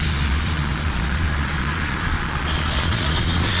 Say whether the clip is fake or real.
fake